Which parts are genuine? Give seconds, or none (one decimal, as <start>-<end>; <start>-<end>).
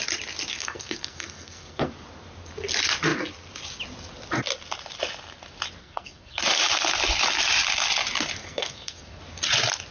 0.0-0.5; 1.9-5.8; 6.4-8.4; 9.2-9.9